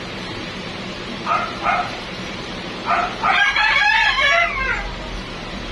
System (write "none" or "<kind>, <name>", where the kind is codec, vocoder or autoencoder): vocoder, BigVGAN v2